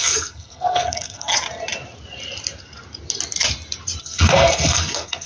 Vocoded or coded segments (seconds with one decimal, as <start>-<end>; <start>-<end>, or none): 0.0-1.3; 4.0-5.3